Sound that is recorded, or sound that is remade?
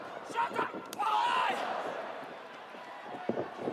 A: remade